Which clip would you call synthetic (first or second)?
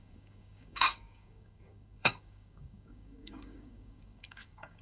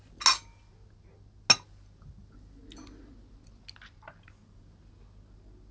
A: first